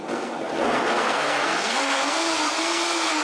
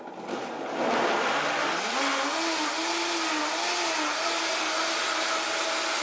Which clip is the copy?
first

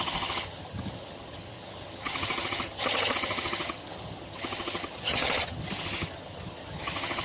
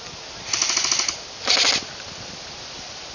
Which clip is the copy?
first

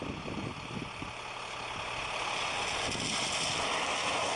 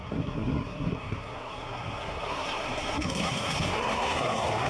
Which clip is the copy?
second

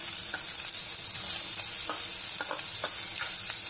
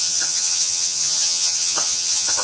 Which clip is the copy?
second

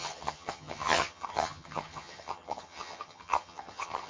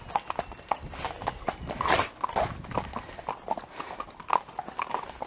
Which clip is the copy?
first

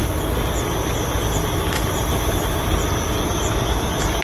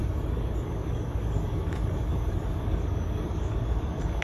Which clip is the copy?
second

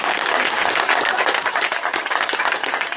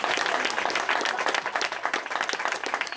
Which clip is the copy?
first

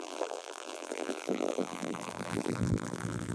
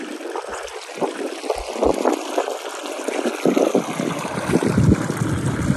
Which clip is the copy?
first